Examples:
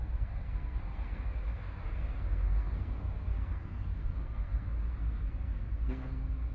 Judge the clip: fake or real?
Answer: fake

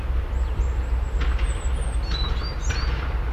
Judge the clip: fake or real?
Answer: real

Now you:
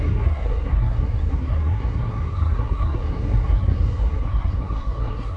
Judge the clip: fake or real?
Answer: fake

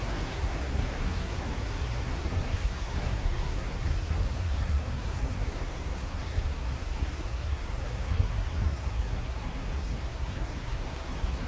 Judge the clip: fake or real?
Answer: fake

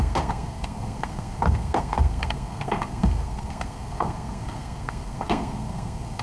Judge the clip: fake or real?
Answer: fake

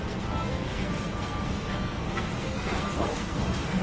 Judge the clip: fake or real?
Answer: fake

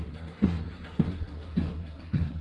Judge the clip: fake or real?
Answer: fake